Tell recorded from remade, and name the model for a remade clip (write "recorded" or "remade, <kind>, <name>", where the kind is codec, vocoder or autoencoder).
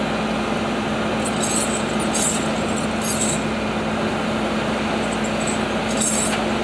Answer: recorded